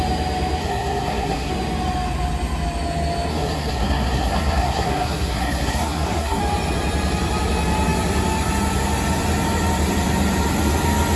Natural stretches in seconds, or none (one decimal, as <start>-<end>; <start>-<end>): 0.0-0.6; 1.5-3.3; 6.4-11.2